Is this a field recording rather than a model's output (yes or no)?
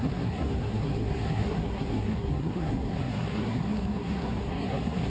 no